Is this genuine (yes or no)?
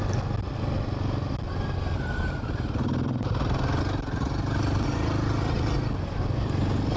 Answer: yes